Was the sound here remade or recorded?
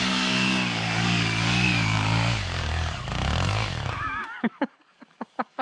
remade